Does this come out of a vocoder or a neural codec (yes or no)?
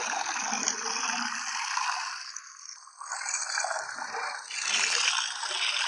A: no